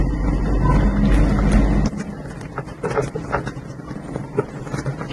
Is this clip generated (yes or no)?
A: no